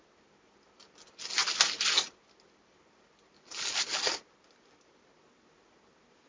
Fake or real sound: real